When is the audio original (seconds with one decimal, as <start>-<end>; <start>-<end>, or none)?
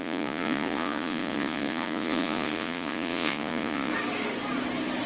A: 3.9-5.1